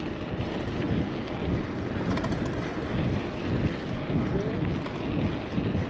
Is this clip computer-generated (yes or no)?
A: no